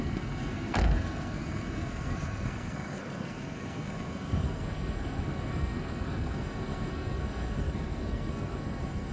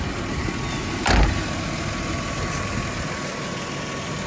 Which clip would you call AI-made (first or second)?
first